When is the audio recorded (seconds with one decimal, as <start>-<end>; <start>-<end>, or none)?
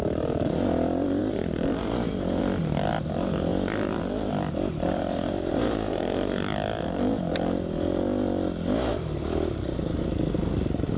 0.0-11.0